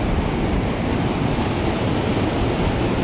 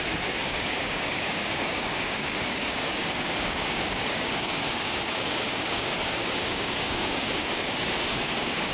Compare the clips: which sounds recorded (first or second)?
first